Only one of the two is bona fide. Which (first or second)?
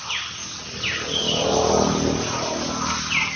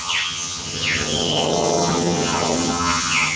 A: first